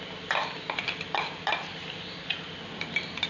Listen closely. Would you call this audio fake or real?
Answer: real